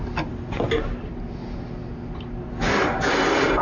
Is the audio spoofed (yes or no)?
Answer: no